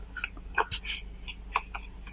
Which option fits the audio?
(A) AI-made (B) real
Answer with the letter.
B